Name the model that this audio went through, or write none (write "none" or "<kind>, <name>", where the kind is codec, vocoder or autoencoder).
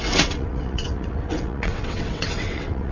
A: vocoder, WaveNeXt